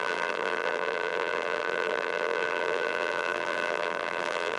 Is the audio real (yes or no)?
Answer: no